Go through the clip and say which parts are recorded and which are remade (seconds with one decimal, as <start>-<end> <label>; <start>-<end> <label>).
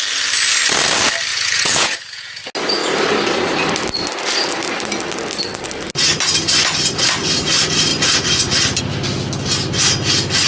0.0-1.3 recorded; 1.3-2.4 remade; 2.4-10.5 recorded